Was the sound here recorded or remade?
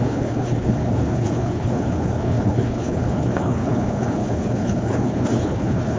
remade